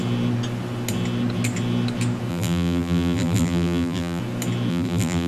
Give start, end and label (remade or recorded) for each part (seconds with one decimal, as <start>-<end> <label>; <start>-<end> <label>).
0.0-2.3 recorded; 2.3-4.2 remade; 4.2-4.7 recorded; 4.7-5.3 remade